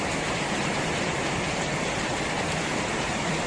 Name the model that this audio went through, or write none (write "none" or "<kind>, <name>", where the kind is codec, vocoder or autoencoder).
vocoder, BigVGAN v2